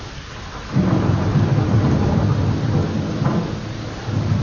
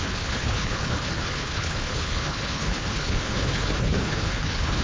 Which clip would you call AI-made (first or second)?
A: second